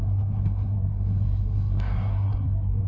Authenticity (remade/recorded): remade